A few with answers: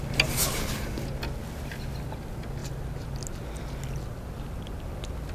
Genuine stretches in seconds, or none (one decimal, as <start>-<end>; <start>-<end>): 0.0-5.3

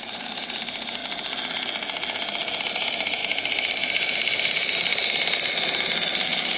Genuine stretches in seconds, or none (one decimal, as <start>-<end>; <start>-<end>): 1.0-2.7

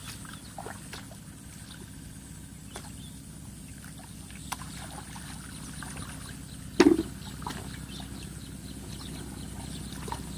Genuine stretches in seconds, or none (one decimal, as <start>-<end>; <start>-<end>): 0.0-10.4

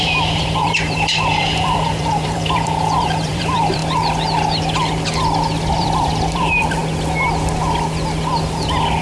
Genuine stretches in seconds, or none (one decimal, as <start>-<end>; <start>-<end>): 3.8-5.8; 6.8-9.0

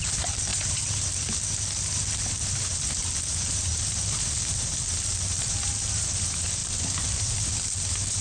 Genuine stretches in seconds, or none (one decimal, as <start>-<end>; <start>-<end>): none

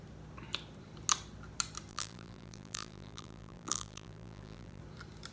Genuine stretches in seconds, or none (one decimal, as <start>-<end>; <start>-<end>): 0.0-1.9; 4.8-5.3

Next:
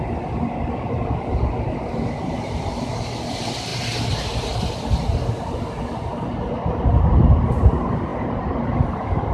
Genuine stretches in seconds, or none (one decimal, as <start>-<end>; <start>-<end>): 0.0-9.3